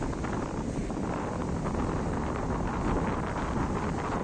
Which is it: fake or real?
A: real